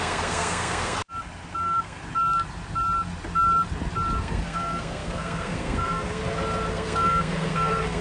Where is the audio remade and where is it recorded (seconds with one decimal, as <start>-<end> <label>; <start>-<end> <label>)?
0.0-1.0 remade; 1.0-1.6 recorded; 1.6-2.0 remade; 2.0-4.2 recorded; 4.2-6.2 remade; 6.2-6.7 recorded; 6.7-8.0 remade